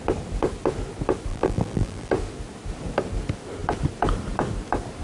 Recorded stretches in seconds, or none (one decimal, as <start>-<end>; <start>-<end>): 0.0-1.3; 2.1-5.0